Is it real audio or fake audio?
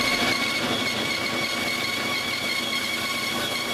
fake